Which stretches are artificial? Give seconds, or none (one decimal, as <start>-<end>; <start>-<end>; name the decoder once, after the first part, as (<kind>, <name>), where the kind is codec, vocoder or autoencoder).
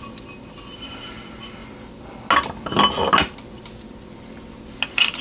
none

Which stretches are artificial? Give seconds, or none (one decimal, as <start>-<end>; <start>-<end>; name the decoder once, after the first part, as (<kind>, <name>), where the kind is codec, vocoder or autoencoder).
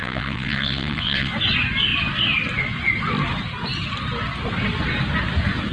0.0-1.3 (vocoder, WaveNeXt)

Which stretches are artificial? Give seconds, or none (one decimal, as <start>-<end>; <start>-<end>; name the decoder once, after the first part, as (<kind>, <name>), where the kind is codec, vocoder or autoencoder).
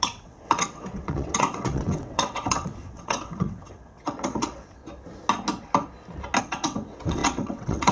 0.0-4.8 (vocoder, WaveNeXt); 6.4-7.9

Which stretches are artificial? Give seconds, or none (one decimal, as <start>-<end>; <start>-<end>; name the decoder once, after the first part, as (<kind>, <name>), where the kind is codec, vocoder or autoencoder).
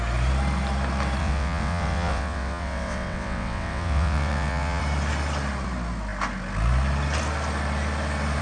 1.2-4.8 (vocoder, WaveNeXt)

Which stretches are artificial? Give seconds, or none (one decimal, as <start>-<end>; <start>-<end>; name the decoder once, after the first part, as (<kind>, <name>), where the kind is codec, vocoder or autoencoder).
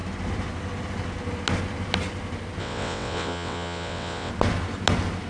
2.6-4.3 (vocoder, WaveNeXt)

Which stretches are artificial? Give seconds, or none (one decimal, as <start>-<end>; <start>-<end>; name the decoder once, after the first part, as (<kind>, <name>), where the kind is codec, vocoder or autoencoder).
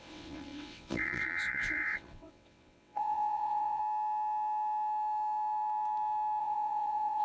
0.0-3.8 (vocoder, WaveNeXt); 6.4-7.2